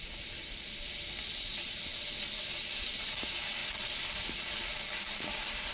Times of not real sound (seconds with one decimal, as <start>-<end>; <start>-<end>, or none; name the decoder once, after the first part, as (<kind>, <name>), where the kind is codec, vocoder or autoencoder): none